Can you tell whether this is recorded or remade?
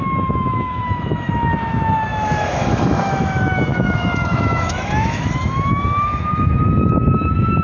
remade